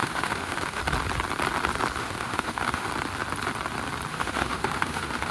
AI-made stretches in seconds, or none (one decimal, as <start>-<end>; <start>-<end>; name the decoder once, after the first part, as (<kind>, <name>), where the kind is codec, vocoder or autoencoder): 0.0-0.8 (autoencoder, DAC-VAE); 2.0-2.9; 4.1-5.3